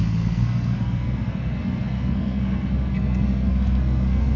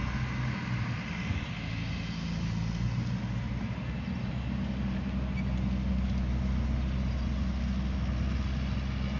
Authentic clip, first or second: second